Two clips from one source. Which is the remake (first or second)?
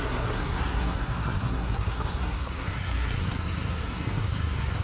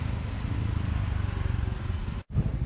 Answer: first